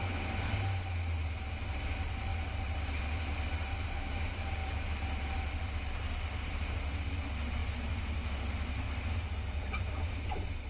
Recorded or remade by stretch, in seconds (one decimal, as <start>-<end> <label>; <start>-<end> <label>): 0.0-10.7 recorded